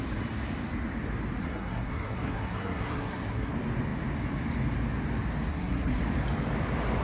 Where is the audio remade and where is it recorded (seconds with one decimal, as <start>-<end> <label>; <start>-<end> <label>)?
0.0-1.4 recorded; 1.4-3.5 remade; 3.5-5.5 recorded; 5.5-6.0 remade; 6.0-7.0 recorded